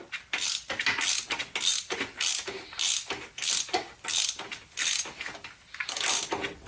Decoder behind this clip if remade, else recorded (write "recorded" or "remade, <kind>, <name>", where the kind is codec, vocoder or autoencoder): recorded